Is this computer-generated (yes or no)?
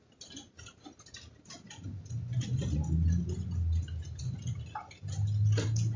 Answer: no